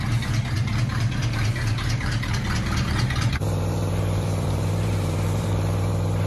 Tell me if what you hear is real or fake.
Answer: fake